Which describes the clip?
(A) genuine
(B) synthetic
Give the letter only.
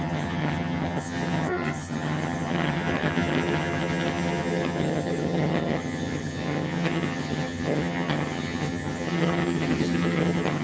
B